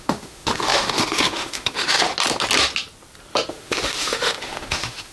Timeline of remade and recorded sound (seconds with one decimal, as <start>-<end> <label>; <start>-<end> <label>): 0.0-2.1 remade; 2.1-3.5 recorded; 3.5-5.1 remade